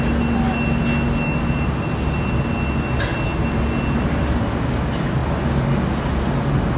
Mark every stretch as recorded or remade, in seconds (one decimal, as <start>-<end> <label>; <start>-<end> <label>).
0.0-6.8 recorded